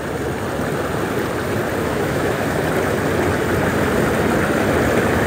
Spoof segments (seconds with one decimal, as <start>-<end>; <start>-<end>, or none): 1.8-2.6